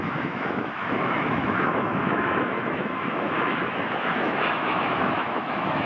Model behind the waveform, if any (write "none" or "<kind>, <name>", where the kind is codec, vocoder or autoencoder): autoencoder, DAC-VAE